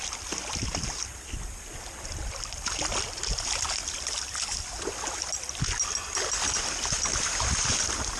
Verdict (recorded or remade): recorded